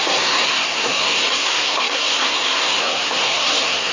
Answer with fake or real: fake